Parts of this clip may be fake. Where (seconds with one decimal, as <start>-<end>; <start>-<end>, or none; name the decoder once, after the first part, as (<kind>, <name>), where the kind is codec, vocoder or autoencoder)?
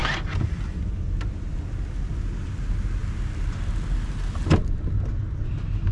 none